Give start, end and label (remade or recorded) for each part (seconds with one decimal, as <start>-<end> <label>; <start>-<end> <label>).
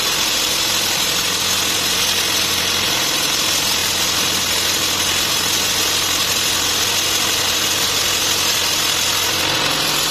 0.0-3.8 recorded; 3.8-5.2 remade; 5.2-10.1 recorded